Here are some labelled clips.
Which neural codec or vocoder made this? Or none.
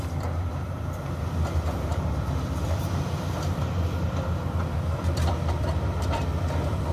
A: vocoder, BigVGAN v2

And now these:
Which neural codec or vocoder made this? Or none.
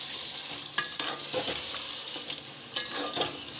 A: none